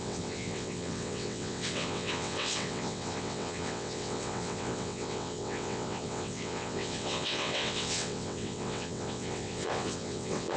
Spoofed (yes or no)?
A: yes